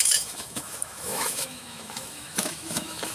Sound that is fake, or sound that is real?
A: fake